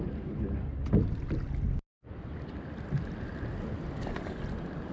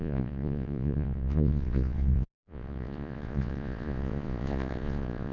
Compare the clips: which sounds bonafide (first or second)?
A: first